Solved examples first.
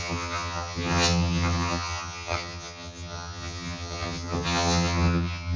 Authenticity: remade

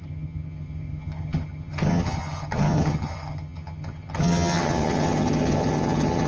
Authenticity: remade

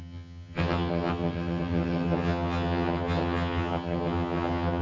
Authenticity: remade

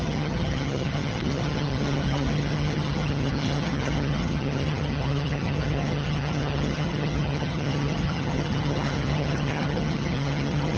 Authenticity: remade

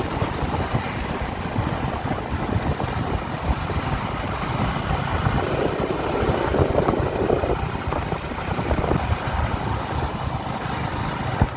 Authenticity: recorded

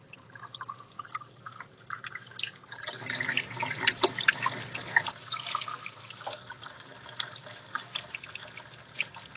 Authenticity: recorded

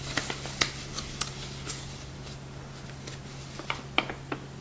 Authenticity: recorded